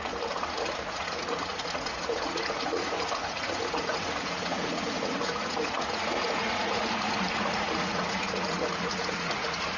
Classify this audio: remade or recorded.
remade